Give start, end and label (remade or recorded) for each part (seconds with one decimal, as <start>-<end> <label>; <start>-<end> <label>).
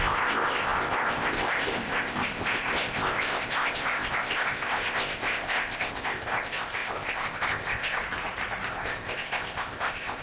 0.0-8.0 remade; 8.0-8.7 recorded; 8.7-10.2 remade